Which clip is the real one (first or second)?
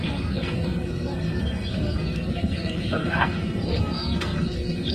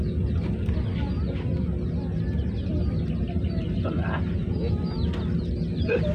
second